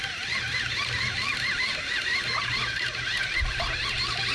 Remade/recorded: recorded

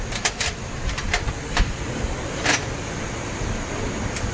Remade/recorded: recorded